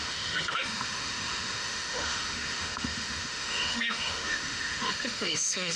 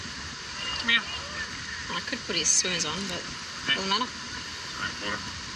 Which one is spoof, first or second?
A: first